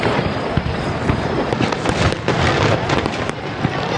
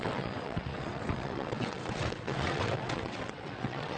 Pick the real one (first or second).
first